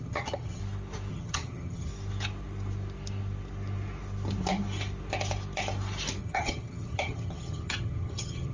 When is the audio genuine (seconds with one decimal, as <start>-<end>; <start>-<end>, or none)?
0.6-1.1; 1.9-6.2